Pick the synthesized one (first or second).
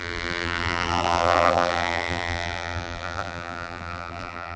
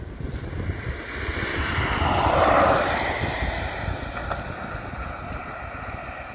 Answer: first